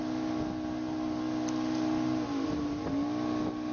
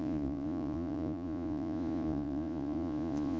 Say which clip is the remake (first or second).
second